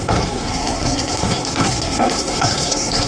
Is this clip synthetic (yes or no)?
yes